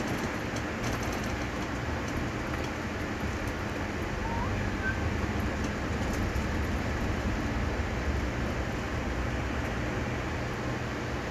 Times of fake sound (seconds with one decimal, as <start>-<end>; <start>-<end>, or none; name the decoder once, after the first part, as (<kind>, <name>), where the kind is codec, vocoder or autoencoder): 1.2-2.1 (vocoder, BigVGAN v2)